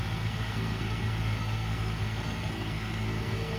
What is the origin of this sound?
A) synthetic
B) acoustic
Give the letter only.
A